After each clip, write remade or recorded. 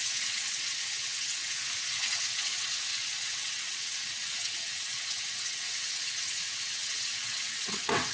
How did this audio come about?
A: remade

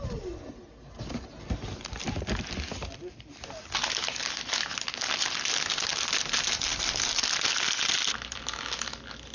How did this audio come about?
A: recorded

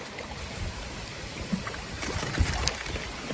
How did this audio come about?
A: recorded